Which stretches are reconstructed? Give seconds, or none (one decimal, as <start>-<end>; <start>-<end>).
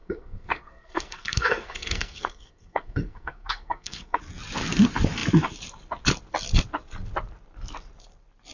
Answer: 0.0-4.2